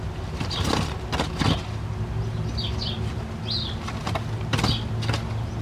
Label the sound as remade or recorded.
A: recorded